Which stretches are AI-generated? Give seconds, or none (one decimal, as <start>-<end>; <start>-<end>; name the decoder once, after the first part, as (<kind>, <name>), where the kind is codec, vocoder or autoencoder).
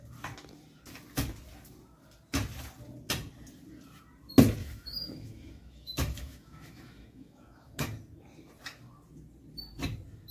4.6-7.7 (autoencoder, DAC-VAE)